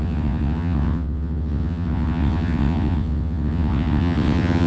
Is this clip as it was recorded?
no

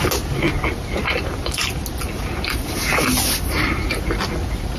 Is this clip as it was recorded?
yes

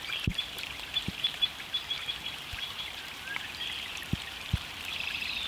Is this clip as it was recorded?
no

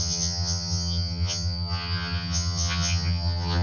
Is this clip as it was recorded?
no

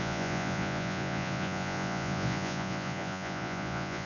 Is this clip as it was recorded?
no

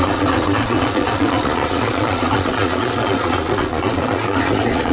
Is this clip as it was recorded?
no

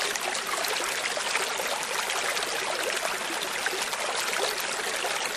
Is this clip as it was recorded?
yes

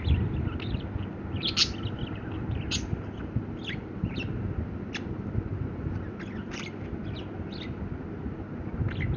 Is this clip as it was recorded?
yes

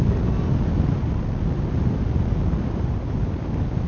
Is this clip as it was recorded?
yes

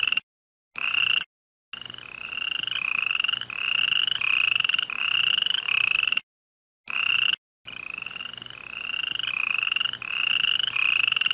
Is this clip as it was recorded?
yes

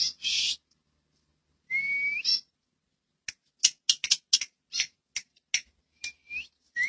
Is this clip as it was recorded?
yes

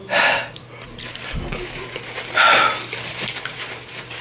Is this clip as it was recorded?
yes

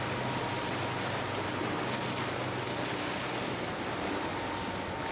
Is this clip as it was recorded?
yes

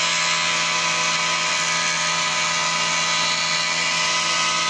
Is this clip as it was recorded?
yes